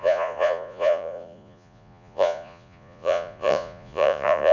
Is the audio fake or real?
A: fake